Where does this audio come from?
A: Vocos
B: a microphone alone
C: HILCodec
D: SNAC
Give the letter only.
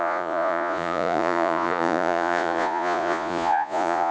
A